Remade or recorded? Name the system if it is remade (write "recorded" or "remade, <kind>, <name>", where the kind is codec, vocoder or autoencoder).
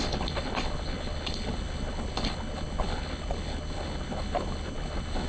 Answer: remade, codec, HILCodec